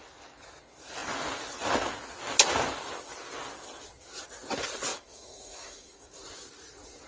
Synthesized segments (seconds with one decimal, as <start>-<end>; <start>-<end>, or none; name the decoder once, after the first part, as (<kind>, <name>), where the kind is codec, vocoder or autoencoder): 4.9-6.2 (autoencoder, DAC-VAE)